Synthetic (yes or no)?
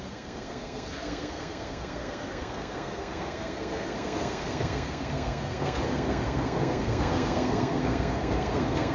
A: yes